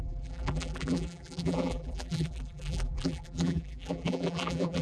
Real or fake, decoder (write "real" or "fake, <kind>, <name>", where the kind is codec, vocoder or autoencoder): fake, vocoder, BigVGAN v2